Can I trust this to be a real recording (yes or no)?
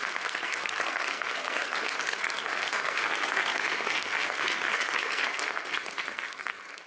no